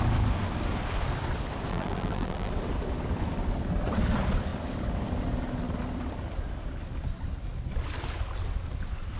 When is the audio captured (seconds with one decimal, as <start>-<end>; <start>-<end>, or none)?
0.0-1.7; 2.5-9.2